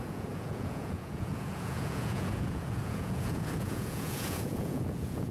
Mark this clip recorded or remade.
remade